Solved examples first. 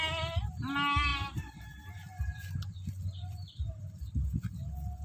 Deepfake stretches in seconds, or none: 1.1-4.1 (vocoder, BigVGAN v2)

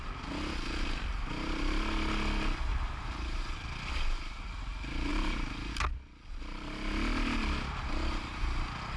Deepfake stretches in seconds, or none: 2.7-3.4 (vocoder, BigVGAN v2); 5.1-5.7

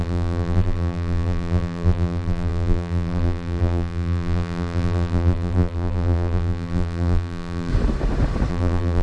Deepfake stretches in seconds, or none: 0.0-7.7 (vocoder, BigVGAN v2); 8.5-9.0

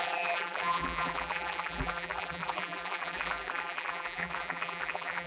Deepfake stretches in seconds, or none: 0.0-5.3 (vocoder, BigVGAN v2)

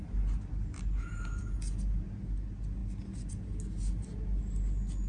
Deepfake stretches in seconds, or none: none

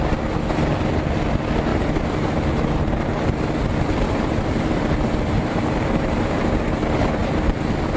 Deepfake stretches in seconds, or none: 1.7-6.5 (vocoder, BigVGAN v2)